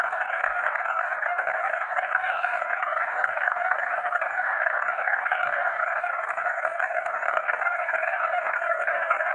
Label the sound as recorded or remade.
remade